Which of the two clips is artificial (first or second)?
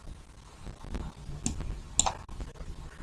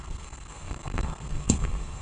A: second